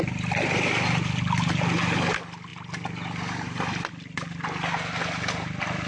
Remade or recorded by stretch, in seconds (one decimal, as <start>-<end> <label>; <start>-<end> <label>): 0.0-5.9 recorded